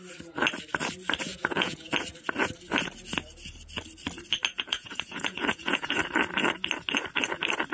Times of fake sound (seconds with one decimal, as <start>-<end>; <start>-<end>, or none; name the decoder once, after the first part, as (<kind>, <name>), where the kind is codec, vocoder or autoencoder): 1.3-1.9 (vocoder, Vocos); 4.5-6.0